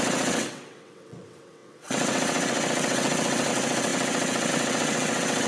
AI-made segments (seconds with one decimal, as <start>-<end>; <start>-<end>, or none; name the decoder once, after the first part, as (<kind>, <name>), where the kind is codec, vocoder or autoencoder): 0.0-5.5 (vocoder, WaveNeXt)